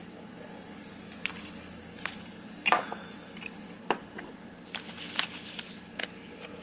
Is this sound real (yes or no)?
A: yes